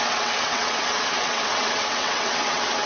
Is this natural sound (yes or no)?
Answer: no